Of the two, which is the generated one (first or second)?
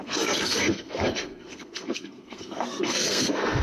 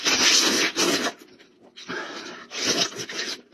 first